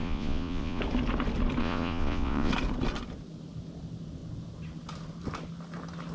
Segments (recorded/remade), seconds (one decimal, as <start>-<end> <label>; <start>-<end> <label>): 0.0-0.8 remade; 0.8-1.6 recorded; 1.6-2.5 remade; 2.5-6.1 recorded